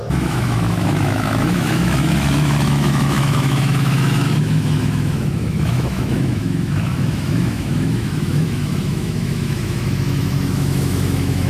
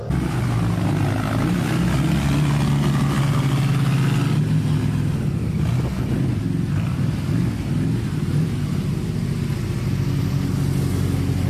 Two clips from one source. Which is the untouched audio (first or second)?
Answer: second